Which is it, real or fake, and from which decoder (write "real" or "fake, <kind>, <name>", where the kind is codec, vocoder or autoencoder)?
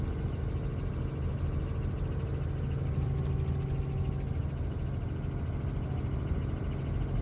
real